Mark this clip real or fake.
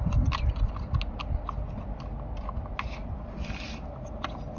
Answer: real